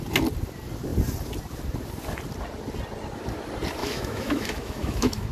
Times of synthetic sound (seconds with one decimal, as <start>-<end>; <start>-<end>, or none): 3.8-5.3